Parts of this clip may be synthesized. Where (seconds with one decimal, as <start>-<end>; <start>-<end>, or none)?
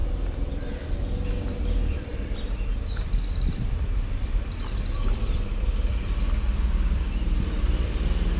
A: 0.0-8.4